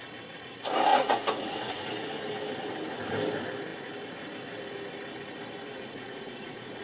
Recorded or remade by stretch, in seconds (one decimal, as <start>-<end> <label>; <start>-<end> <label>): 0.0-0.9 recorded; 0.9-1.9 remade; 1.9-5.7 recorded; 5.7-6.8 remade